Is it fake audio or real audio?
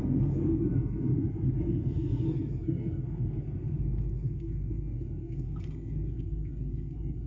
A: fake